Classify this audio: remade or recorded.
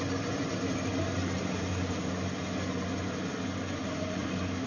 recorded